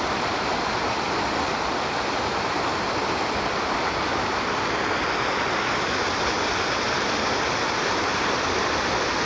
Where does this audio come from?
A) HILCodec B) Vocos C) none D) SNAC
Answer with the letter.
C